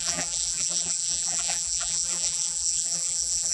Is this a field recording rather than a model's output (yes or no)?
no